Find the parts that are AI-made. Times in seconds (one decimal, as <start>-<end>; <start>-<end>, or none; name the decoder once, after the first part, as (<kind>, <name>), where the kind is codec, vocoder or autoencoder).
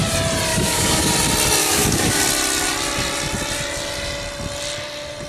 0.5-1.1 (codec, DAC); 1.6-2.2